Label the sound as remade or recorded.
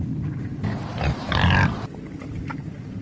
remade